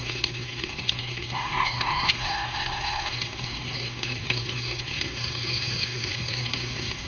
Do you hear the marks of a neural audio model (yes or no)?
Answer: yes